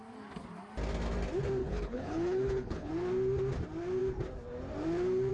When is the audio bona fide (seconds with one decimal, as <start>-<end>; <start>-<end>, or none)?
0.0-1.6; 2.9-5.3